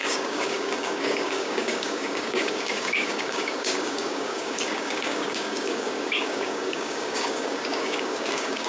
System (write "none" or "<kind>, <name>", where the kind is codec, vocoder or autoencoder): codec, DAC